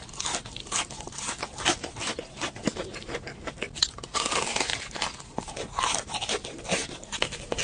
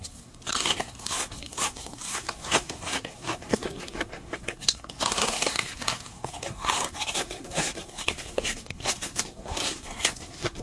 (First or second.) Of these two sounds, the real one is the first